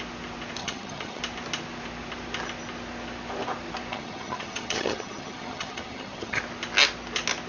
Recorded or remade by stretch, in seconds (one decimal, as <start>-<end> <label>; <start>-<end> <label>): 0.0-0.6 recorded; 0.6-1.2 remade; 1.2-3.9 recorded; 3.9-6.4 remade; 6.4-7.5 recorded